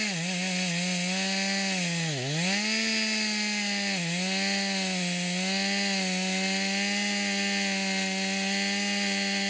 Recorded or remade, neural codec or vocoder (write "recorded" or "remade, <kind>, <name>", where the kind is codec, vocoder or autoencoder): recorded